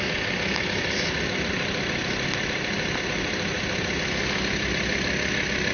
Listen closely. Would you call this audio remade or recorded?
recorded